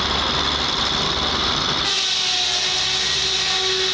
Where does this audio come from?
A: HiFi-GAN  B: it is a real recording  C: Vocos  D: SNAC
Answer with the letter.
B